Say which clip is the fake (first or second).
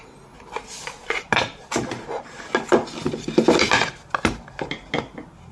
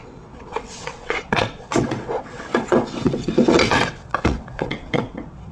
second